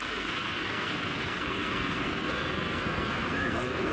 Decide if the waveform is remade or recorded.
remade